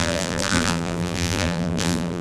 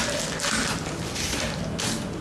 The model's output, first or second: first